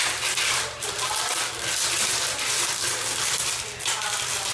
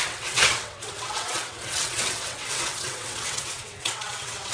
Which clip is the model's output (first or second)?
second